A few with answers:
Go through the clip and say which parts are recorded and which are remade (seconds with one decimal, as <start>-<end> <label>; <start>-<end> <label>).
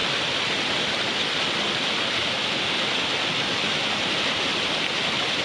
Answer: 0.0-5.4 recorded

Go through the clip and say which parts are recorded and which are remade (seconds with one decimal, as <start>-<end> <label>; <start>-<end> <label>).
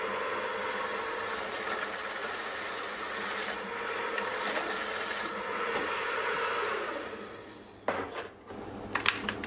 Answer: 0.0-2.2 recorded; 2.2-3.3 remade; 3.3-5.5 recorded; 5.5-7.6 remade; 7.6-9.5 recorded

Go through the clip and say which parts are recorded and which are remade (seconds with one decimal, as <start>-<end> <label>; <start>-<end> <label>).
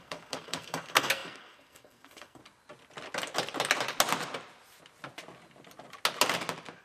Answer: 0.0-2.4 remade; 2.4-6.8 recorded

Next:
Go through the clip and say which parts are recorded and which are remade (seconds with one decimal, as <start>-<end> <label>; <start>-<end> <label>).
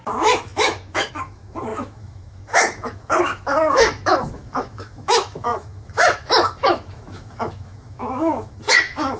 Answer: 0.0-9.2 remade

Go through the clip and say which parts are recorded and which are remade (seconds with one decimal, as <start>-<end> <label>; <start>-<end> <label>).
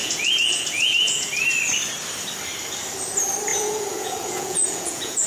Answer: 0.0-1.3 remade; 1.3-3.5 recorded; 3.5-5.3 remade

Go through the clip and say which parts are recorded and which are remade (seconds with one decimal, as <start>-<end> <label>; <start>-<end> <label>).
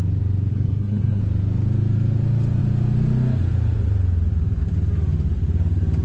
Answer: 0.0-0.5 recorded; 0.5-1.2 remade; 1.2-6.0 recorded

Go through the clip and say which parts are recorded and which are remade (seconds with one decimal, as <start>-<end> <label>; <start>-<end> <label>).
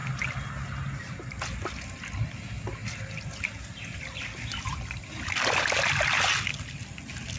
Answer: 0.0-2.8 recorded; 2.8-5.6 remade; 5.6-7.4 recorded